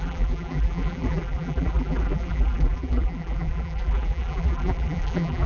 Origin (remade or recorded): remade